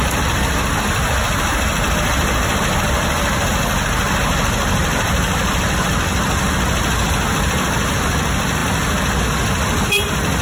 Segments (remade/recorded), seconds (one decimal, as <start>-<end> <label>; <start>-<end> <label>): 0.0-4.8 recorded; 4.8-6.2 remade; 6.2-10.4 recorded